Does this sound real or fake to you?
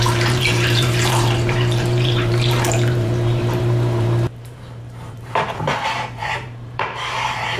fake